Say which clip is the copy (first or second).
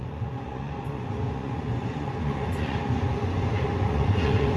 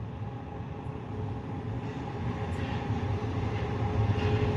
first